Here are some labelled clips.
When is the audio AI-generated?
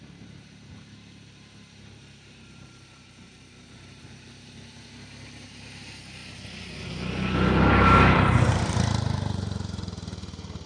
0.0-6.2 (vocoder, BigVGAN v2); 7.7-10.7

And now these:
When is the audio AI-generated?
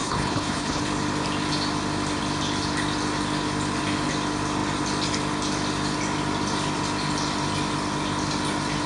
0.0-0.8 (codec, HILCodec)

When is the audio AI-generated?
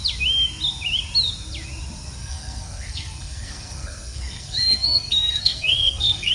2.2-6.3 (codec, SNAC)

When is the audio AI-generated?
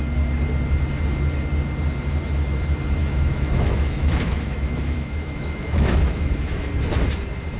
3.0-6.7 (autoencoder, DAC-VAE)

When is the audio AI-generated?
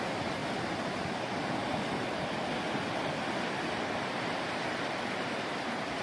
0.0-0.4 (vocoder, BigVGAN v2); 4.0-6.0